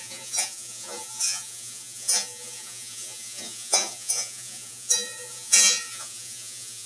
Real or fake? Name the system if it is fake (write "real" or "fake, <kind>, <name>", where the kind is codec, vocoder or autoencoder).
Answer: fake, vocoder, Vocos